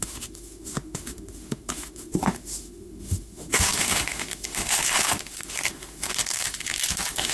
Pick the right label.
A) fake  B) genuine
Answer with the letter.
A